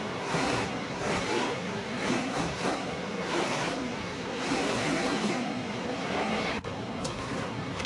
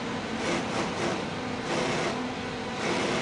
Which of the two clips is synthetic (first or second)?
first